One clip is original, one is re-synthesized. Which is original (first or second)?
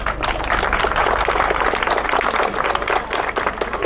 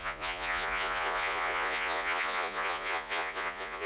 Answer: first